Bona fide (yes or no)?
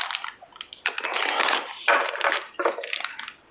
yes